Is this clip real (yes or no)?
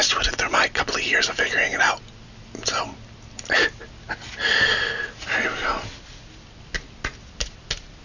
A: yes